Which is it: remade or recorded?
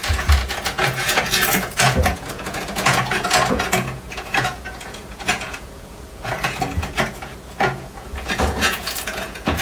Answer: remade